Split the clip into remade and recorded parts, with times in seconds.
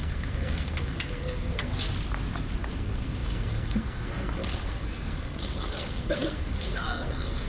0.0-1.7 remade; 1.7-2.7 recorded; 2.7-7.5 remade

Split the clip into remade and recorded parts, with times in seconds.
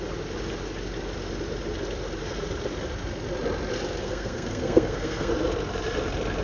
0.0-4.0 recorded; 4.0-5.3 remade; 5.3-6.4 recorded